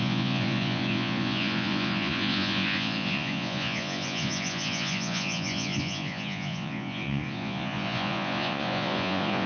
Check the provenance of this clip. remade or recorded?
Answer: remade